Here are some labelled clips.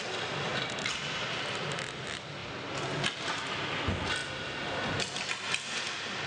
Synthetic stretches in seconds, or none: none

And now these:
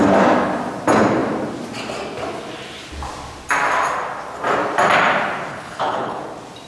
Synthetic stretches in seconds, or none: 5.5-6.2 (codec, HILCodec)

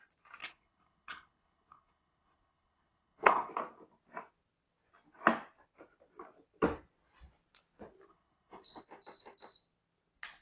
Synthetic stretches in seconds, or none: 0.4-3.5 (codec, HILCodec); 8.1-8.8